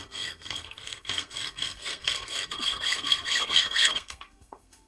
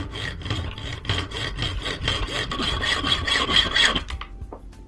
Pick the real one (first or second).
second